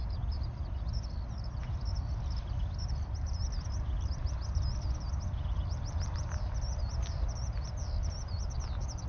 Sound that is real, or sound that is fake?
real